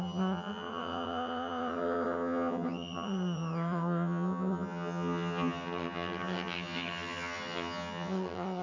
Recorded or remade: remade